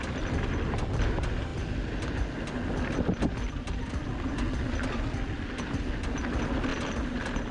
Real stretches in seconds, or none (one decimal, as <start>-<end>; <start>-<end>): 0.0-6.7